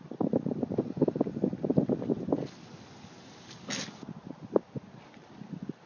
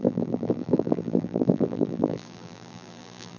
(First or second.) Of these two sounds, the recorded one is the first